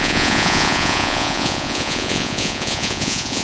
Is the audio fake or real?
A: fake